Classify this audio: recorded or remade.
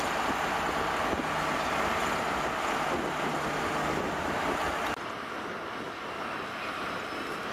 recorded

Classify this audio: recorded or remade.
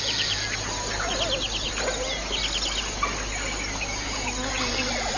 recorded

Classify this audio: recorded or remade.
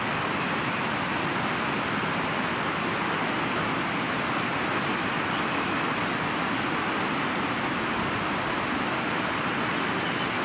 recorded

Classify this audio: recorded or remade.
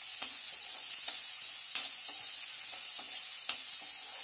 remade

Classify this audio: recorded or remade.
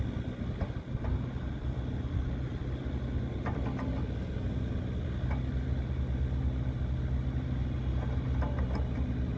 recorded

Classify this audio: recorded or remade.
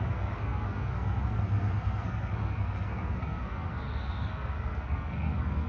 remade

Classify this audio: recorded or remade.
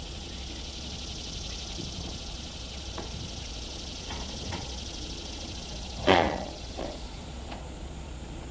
remade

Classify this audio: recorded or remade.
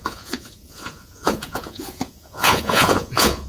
remade